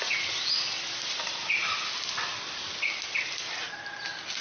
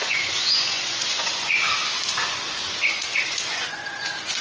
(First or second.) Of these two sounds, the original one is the first